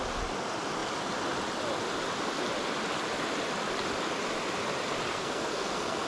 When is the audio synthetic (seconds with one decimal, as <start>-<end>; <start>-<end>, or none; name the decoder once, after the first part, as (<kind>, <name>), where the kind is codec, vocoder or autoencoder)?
5.1-6.1 (codec, SNAC)